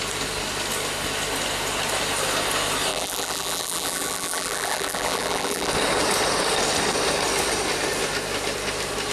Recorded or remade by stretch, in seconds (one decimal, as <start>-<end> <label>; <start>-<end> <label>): 0.0-2.9 recorded; 2.9-5.7 remade; 5.7-9.1 recorded